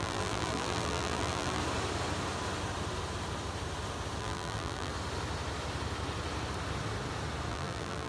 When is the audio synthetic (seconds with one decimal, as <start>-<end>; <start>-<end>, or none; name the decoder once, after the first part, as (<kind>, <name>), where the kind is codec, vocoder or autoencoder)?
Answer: 0.0-1.6 (vocoder, BigVGAN v2); 4.2-4.9; 7.5-8.1